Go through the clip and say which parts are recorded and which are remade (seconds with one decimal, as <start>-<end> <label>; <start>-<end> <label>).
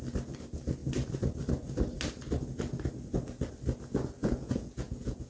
0.0-4.2 recorded; 4.2-5.3 remade